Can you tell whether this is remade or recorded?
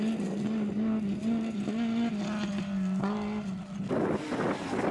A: recorded